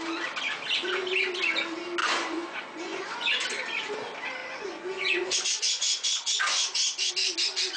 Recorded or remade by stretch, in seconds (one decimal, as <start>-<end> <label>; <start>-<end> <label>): 0.0-2.0 recorded; 2.0-3.3 remade; 3.3-4.4 recorded; 4.4-7.1 remade; 7.1-7.8 recorded